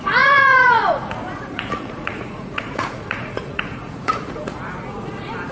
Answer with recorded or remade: remade